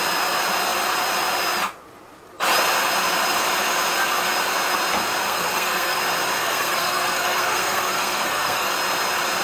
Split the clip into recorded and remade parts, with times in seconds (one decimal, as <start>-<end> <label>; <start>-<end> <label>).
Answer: 0.0-5.2 recorded; 5.2-6.0 remade; 6.0-6.4 recorded; 6.4-8.7 remade; 8.7-9.4 recorded